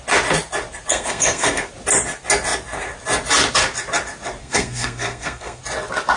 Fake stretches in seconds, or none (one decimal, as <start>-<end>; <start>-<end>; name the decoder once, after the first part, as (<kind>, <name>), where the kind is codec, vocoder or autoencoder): 0.9-1.7 (codec, SNAC); 4.4-5.6